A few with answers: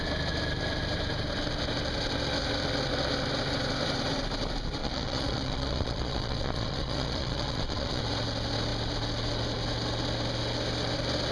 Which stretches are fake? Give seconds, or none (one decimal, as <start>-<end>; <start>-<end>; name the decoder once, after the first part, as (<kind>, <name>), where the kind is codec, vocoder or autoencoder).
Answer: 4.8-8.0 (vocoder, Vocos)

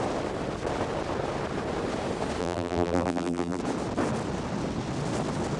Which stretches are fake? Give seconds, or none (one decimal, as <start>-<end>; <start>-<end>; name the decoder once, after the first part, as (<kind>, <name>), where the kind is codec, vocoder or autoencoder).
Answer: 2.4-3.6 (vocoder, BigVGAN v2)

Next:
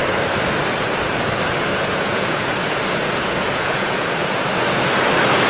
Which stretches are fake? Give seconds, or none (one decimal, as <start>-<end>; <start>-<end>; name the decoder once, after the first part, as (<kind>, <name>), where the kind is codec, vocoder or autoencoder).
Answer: 1.7-4.4 (vocoder, Vocos)